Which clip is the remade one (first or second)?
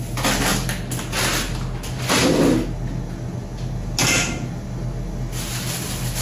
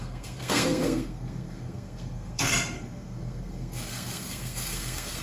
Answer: second